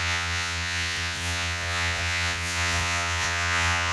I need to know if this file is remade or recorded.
remade